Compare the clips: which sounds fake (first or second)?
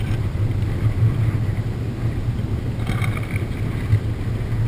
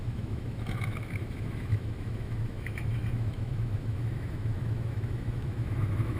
second